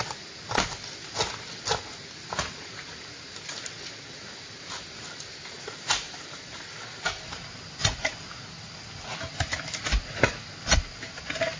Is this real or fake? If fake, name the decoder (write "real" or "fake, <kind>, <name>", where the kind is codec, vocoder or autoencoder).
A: real